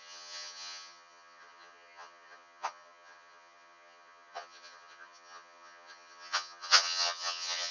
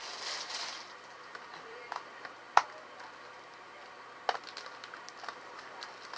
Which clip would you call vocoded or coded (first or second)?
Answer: first